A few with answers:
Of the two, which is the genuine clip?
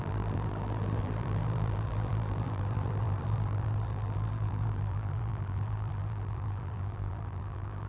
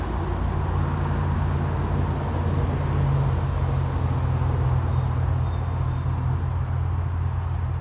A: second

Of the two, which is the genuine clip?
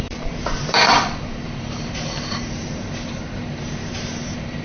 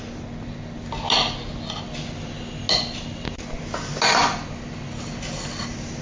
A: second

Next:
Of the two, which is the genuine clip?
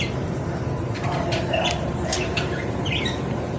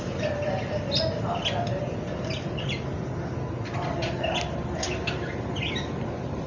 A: second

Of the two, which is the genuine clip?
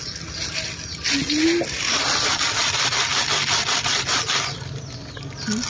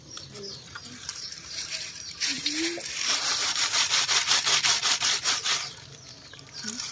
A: first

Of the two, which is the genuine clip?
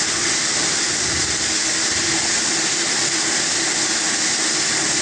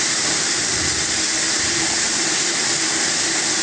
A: first